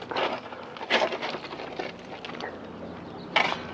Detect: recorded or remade recorded